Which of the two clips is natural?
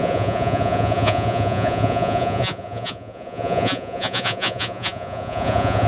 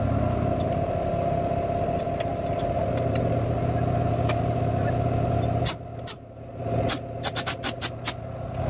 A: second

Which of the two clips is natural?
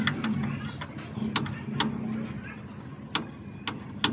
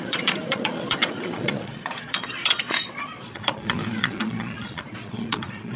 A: first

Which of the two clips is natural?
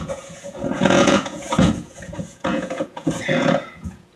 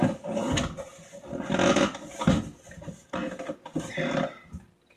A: second